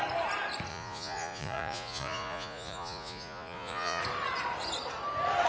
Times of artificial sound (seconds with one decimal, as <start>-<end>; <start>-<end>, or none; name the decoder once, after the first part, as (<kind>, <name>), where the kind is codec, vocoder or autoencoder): 0.7-4.0 (vocoder, Vocos)